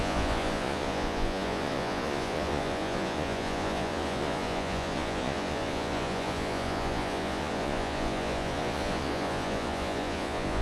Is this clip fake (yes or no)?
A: yes